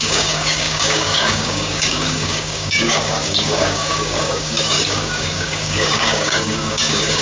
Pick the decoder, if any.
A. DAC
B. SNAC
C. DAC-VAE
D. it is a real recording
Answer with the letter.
A